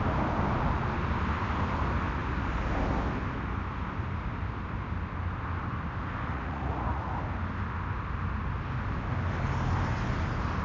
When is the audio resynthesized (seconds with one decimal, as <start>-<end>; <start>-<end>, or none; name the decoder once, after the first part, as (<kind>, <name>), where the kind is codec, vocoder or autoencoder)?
6.3-7.1 (vocoder, Vocos)